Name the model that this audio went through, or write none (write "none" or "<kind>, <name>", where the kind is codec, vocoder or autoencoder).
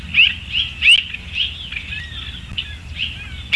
none